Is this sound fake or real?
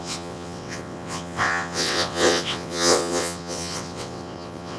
fake